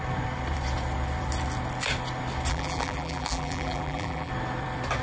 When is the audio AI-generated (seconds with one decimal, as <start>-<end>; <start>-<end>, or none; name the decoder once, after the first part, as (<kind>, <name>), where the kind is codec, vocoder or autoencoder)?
2.5-4.3 (vocoder, BigVGAN v2)